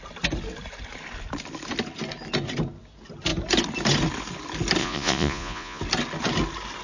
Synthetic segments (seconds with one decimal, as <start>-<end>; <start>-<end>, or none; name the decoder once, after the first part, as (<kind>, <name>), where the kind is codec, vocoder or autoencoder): 4.8-5.8 (vocoder, Vocos)